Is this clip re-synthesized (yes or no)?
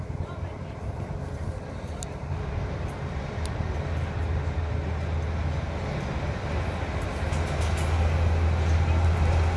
no